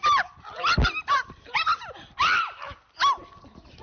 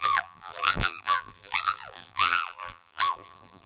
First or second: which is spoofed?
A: second